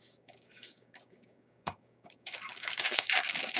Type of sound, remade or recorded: remade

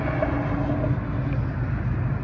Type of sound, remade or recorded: recorded